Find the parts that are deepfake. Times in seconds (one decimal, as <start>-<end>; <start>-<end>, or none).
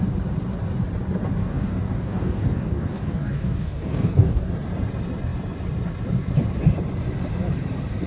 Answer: 1.4-4.5